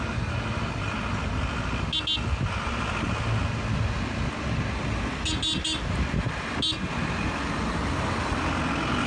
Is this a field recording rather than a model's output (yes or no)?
yes